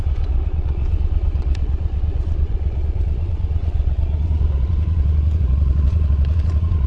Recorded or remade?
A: remade